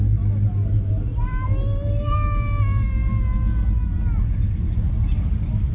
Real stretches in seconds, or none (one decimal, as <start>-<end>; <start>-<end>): 0.0-5.7